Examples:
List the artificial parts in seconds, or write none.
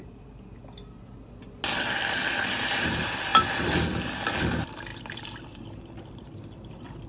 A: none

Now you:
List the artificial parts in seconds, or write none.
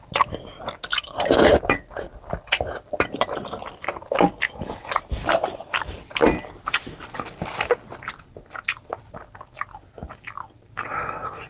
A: 0.9-5.3 (vocoder, BigVGAN v2); 6.2-8.3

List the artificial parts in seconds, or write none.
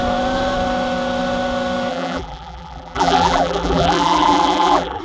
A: 1.9-5.0 (vocoder, BigVGAN v2)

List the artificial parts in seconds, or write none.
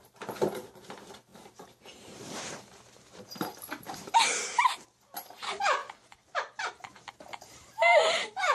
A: 0.0-5.8 (vocoder, BigVGAN v2); 6.7-8.5